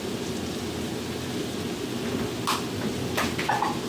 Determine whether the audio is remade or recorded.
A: recorded